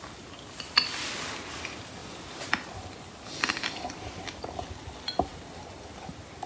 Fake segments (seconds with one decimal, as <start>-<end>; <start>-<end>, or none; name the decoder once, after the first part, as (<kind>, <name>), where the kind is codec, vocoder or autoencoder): none